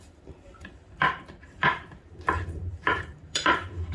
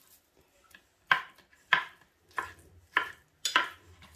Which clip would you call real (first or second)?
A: second